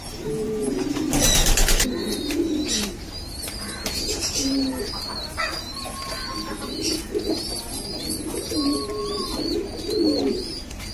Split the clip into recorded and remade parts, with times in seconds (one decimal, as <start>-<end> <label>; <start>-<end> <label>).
0.0-2.0 recorded; 2.0-4.8 remade; 4.8-9.0 recorded; 9.0-10.9 remade